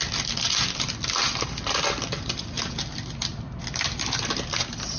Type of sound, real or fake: real